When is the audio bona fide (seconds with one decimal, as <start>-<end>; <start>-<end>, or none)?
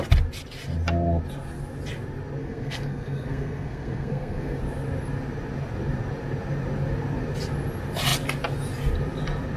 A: 0.0-2.4; 4.6-9.6